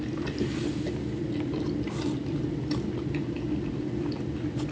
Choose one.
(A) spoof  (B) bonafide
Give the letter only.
B